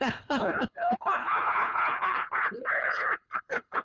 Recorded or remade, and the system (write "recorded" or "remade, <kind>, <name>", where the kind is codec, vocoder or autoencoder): remade, codec, HILCodec